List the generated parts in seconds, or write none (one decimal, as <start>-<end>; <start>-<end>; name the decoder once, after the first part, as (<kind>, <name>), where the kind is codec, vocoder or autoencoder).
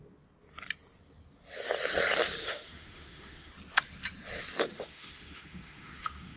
2.4-3.5 (autoencoder, DAC-VAE); 4.7-6.4